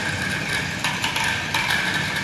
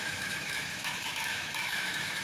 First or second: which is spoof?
second